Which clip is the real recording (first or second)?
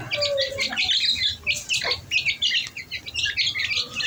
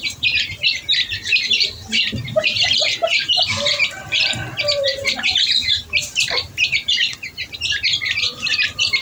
first